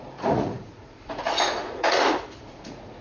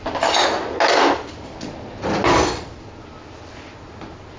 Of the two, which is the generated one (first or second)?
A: first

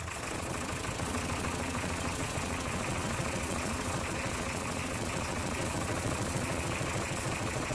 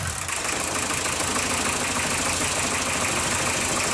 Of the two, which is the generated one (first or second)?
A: first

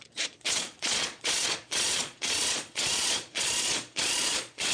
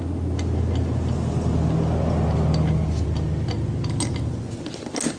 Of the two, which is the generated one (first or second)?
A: first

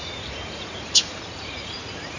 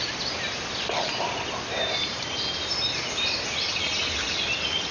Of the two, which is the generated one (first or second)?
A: first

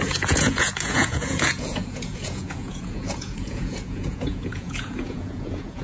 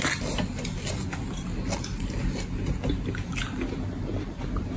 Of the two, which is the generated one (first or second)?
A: first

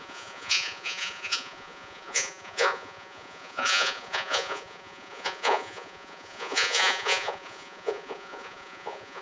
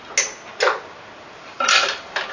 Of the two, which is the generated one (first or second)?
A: first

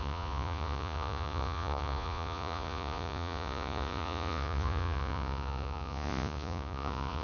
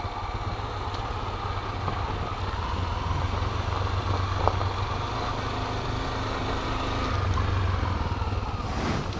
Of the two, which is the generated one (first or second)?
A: first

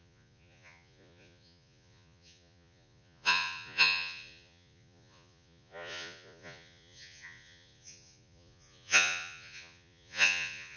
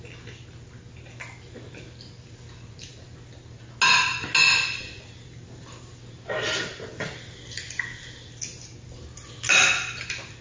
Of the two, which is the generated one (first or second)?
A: first